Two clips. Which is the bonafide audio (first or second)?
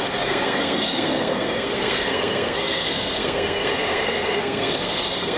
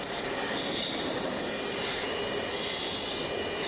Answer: second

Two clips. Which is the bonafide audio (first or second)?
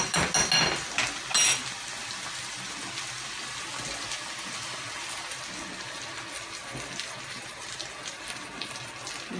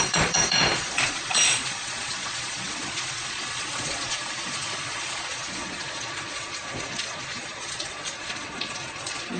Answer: first